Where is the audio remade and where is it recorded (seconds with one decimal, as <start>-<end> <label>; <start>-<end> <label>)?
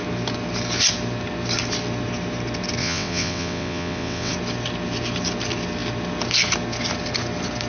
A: 0.0-2.8 recorded; 2.8-4.3 remade; 4.3-7.7 recorded